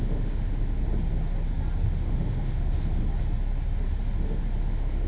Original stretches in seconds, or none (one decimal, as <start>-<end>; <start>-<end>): 0.8-1.9; 3.0-4.2